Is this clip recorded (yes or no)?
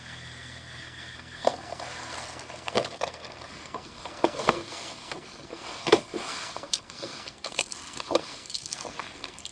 no